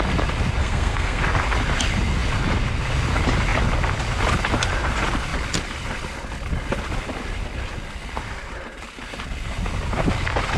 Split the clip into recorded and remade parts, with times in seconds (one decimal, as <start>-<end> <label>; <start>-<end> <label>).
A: 0.0-0.6 recorded; 0.6-1.2 remade; 1.2-10.6 recorded